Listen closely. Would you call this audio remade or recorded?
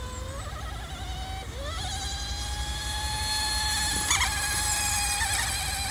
recorded